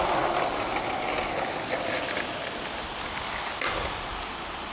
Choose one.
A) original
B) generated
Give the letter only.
A